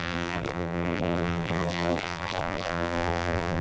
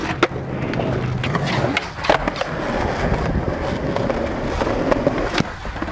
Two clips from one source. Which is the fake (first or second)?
first